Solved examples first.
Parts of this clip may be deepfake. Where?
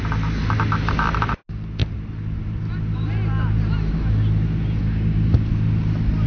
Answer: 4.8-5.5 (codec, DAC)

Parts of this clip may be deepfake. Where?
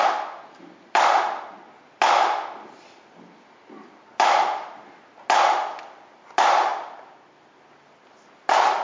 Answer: none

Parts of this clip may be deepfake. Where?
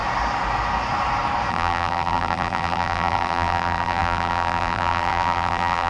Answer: 1.5-5.9 (vocoder, BigVGAN v2)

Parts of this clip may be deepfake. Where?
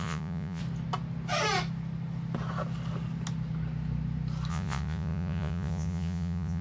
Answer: 0.0-0.6 (vocoder, Vocos); 4.5-6.6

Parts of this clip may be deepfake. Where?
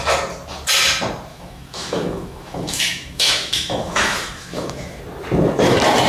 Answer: 1.3-5.0 (autoencoder, DAC-VAE)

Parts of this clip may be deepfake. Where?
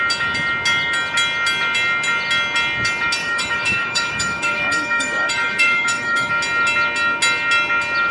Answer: 3.2-6.3 (autoencoder, DAC-VAE)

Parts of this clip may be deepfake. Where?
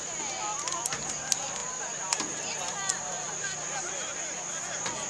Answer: none